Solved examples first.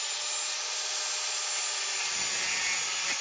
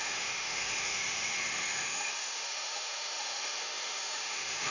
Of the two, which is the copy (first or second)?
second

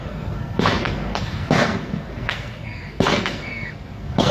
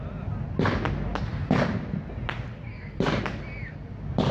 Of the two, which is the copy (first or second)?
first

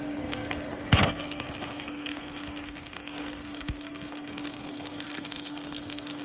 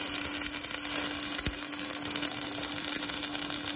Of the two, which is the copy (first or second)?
first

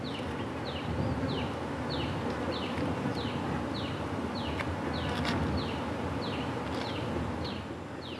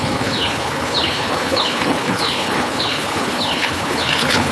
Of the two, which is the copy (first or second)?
second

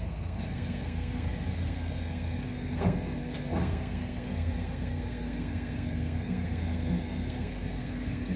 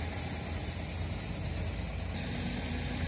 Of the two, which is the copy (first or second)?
first